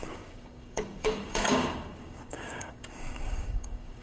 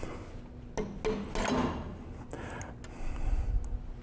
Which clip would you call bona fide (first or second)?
second